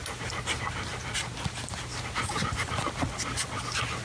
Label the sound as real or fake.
real